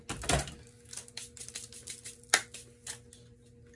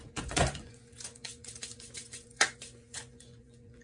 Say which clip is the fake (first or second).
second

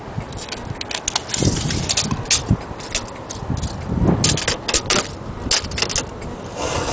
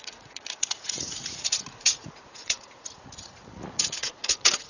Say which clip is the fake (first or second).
second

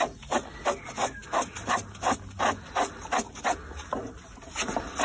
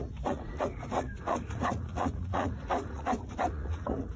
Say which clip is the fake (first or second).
second